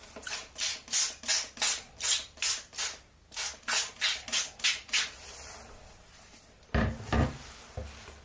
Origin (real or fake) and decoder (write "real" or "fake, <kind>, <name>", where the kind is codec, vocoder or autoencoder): real